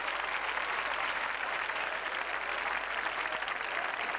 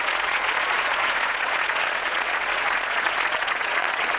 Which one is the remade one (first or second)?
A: second